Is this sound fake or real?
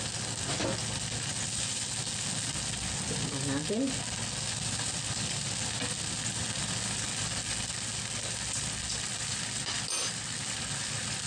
real